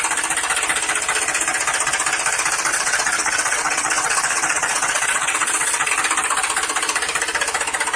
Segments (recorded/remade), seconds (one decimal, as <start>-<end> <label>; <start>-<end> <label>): 0.0-2.7 recorded; 2.7-5.9 remade; 5.9-8.0 recorded